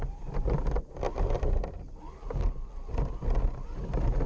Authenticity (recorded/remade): recorded